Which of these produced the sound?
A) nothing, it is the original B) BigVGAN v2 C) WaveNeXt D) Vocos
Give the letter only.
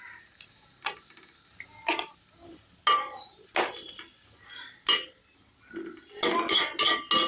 A